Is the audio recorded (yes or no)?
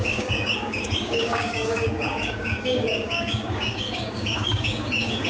no